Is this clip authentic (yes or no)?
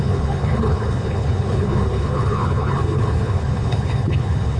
no